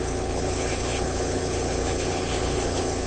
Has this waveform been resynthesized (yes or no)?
yes